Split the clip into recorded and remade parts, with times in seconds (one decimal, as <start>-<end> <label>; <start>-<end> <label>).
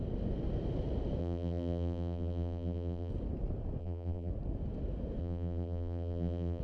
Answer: 0.0-1.2 recorded; 1.2-3.1 remade; 3.1-3.8 recorded; 3.8-4.3 remade; 4.3-5.2 recorded; 5.2-6.6 remade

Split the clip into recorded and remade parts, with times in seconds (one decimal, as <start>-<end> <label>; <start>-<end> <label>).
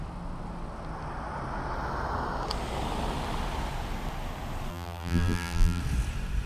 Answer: 0.0-4.7 recorded; 4.7-5.8 remade; 5.8-6.5 recorded